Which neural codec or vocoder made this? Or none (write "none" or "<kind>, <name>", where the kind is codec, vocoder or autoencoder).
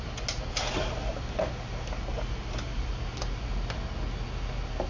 none